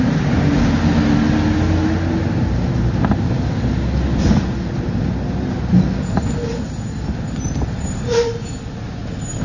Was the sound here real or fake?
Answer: real